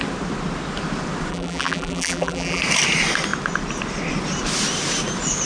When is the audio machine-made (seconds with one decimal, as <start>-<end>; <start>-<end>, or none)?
1.3-2.6